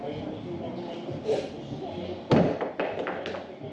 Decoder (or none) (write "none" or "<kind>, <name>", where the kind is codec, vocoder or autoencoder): none